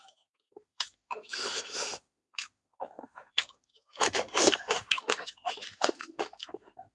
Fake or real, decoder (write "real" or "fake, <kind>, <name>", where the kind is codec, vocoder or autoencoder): fake, autoencoder, DAC-VAE